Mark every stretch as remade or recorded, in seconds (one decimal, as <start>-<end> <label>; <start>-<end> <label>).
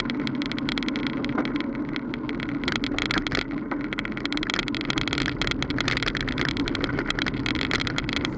0.0-8.4 recorded